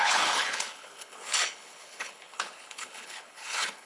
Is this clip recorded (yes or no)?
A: no